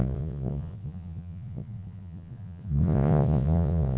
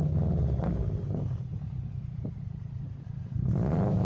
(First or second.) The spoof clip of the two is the first